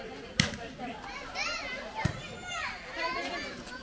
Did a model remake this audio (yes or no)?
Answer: no